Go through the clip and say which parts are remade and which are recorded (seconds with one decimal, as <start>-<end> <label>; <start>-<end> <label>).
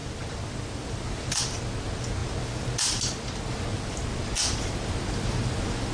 0.0-1.4 remade; 1.4-5.9 recorded